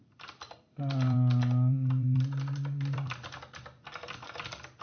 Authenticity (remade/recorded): remade